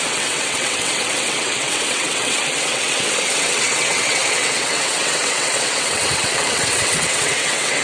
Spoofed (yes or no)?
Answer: yes